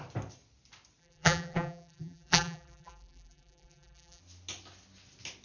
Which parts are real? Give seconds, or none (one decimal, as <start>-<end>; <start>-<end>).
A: 0.0-1.0; 4.2-5.4